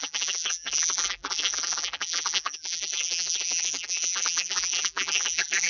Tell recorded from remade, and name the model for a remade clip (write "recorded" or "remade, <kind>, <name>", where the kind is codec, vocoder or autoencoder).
remade, vocoder, BigVGAN v2